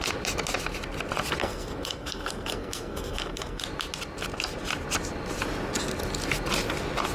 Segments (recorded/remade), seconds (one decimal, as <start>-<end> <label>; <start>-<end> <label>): 0.0-1.4 recorded; 1.4-3.6 remade; 3.6-7.1 recorded